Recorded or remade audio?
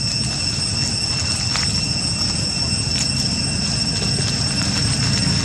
recorded